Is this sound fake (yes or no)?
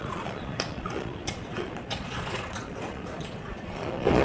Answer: yes